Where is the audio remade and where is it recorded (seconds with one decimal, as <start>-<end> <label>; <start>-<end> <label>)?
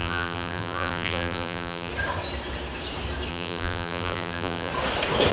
0.0-1.9 remade; 1.9-3.3 recorded; 3.3-4.7 remade; 4.7-5.3 recorded